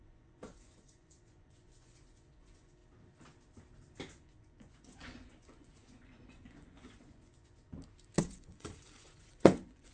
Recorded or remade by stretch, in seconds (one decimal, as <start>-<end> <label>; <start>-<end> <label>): 0.0-2.8 remade; 2.8-4.1 recorded; 4.1-7.7 remade; 7.7-8.2 recorded; 8.2-9.9 remade